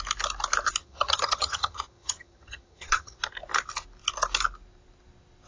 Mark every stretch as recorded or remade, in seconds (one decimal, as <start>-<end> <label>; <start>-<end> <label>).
0.0-0.8 recorded; 0.8-3.2 remade; 3.2-5.5 recorded